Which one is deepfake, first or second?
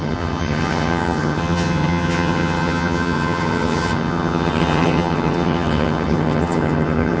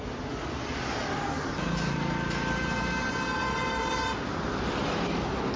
first